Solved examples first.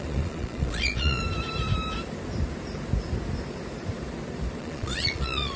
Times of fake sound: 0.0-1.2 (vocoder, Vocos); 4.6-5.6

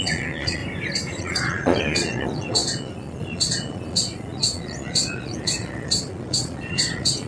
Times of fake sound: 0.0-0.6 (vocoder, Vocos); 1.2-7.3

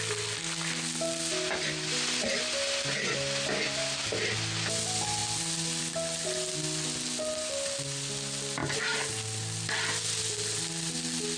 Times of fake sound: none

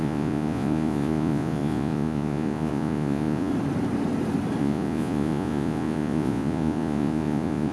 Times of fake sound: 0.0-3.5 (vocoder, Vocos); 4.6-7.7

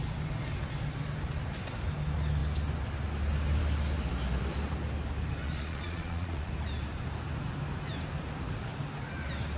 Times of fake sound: 5.4-6.5 (vocoder, Vocos)